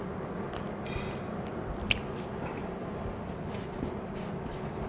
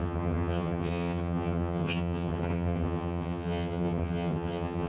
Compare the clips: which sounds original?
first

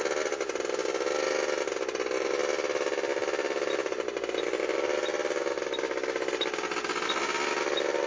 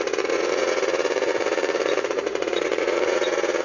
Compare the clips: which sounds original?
first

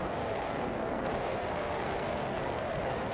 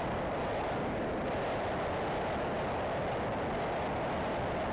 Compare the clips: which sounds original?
second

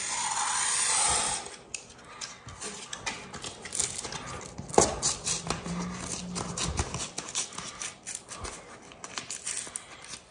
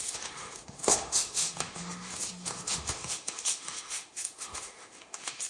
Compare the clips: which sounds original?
first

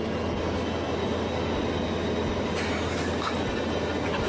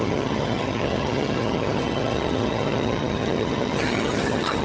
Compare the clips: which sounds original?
first